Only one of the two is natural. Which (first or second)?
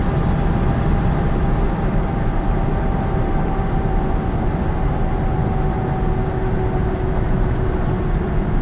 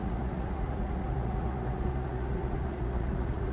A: first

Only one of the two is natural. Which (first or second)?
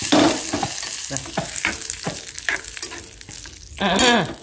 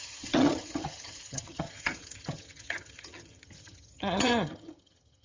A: first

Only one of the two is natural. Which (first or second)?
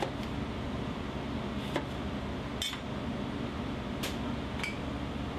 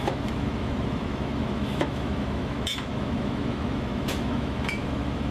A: first